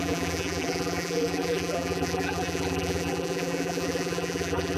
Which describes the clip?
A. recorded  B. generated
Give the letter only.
B